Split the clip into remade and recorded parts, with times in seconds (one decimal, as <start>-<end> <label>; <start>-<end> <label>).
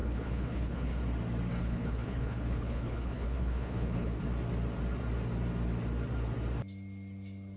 0.0-1.0 remade; 1.0-1.6 recorded; 1.6-4.2 remade; 4.2-7.6 recorded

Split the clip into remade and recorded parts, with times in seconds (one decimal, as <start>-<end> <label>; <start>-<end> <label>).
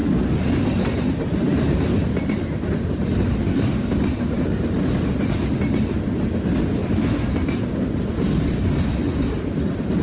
0.0-10.0 recorded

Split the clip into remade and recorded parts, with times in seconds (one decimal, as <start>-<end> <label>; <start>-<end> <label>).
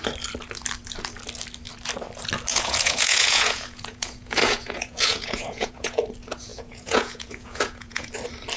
0.0-2.5 recorded; 2.5-6.0 remade; 6.0-6.5 recorded; 6.5-8.1 remade; 8.1-8.6 recorded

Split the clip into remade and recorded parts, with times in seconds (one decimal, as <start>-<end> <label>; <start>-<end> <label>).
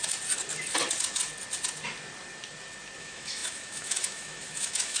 0.0-3.0 recorded; 3.0-5.0 remade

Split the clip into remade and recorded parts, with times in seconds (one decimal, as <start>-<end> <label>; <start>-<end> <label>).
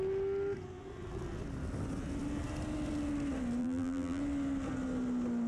0.0-3.6 recorded; 3.6-4.2 remade; 4.2-5.5 recorded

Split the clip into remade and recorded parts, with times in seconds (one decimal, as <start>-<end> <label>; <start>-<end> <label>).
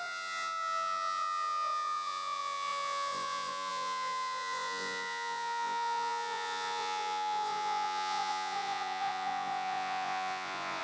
0.0-10.8 remade